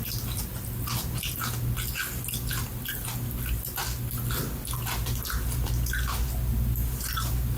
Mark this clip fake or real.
real